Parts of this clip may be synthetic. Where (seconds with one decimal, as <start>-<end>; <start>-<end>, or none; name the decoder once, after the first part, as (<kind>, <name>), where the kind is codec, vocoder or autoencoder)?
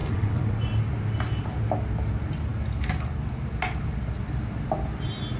0.0-0.6 (vocoder, WaveNeXt)